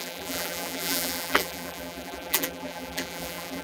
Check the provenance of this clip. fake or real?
fake